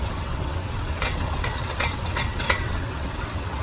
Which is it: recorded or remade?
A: remade